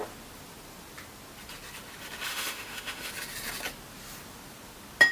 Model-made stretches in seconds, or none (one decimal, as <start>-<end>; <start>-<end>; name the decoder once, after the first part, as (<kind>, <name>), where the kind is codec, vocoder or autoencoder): 2.3-3.1 (autoencoder, DAC-VAE)

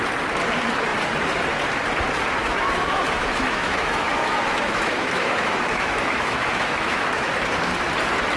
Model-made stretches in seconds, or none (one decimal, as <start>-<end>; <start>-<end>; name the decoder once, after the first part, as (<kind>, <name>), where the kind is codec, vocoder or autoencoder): 2.4-7.3 (autoencoder, DAC-VAE)

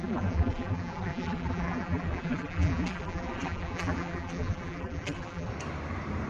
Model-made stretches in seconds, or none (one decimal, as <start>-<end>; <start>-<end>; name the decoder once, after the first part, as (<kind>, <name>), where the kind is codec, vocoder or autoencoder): 0.0-5.5 (vocoder, BigVGAN v2)

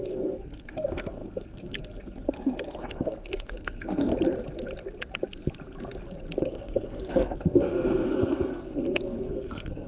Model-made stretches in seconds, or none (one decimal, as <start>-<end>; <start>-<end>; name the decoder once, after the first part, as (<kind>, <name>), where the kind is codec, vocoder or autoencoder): 0.0-4.1 (codec, SNAC); 6.4-9.9

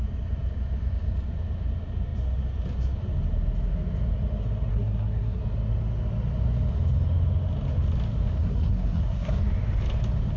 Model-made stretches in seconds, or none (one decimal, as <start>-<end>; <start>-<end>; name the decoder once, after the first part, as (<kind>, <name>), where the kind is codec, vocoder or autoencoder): 4.7-5.4 (codec, SNAC); 8.4-9.4

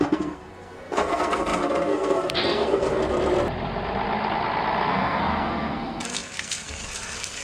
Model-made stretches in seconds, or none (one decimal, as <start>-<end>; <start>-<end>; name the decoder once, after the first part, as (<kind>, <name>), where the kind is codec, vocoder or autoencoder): 0.0-3.0 (codec, SNAC); 4.9-7.4

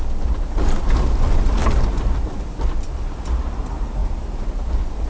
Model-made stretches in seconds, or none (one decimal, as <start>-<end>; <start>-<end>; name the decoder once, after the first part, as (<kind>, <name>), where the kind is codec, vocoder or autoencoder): none

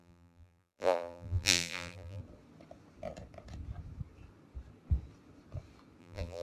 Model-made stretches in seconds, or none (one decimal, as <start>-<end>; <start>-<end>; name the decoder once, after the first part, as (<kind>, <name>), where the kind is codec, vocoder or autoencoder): 0.0-2.2 (vocoder, BigVGAN v2); 6.0-6.4